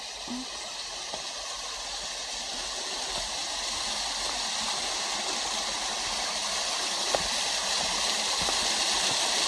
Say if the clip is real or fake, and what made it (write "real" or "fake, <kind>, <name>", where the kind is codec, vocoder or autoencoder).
real